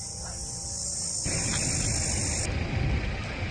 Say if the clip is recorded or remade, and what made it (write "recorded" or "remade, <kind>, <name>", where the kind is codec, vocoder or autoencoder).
recorded